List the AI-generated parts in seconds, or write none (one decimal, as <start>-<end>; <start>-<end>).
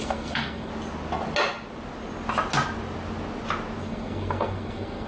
0.0-0.7; 3.8-5.1